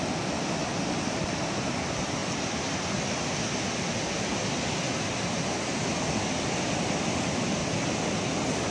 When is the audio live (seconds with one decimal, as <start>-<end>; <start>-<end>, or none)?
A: 0.0-8.7